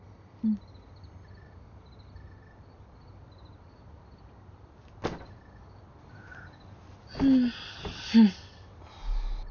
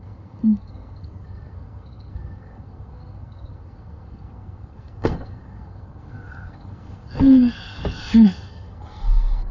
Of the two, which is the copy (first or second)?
second